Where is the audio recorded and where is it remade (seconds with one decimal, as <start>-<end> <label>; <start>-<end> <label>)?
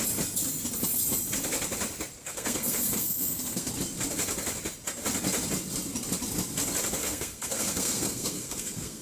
0.0-2.2 recorded; 2.2-3.7 remade; 3.7-7.0 recorded; 7.0-9.0 remade